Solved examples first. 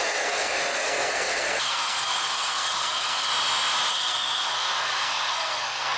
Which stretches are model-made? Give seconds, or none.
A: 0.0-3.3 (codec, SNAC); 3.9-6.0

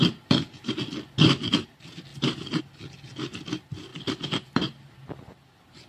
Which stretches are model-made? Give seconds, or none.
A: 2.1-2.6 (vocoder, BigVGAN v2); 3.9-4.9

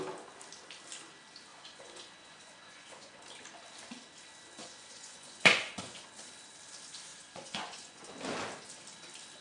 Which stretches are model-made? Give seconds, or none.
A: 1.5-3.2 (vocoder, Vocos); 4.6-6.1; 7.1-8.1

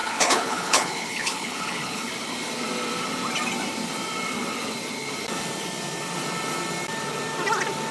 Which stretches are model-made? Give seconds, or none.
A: 0.0-2.0 (codec, HILCodec)

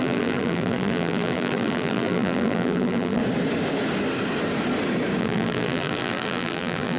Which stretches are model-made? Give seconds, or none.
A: 0.0-3.2 (vocoder, BigVGAN v2); 5.2-7.0